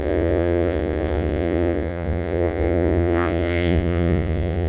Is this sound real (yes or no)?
no